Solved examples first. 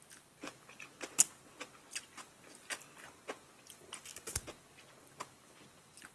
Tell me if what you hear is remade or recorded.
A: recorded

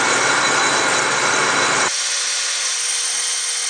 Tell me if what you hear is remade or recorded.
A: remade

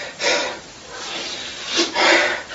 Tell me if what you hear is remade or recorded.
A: remade